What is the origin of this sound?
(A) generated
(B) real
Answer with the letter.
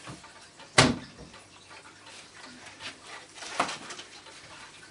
A